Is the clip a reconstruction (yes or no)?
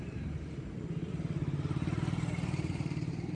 yes